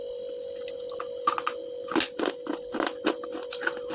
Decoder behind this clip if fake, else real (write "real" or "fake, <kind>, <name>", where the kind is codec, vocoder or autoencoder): real